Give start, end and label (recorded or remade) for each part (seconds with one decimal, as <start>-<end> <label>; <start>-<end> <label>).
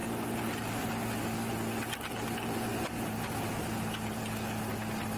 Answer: 0.0-5.2 recorded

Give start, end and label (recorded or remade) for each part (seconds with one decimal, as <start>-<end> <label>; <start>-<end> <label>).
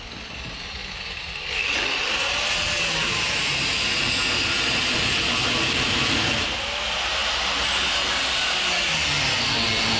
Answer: 0.0-10.0 recorded